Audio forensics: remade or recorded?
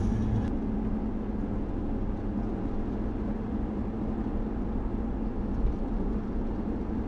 recorded